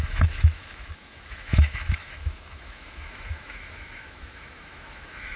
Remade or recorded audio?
remade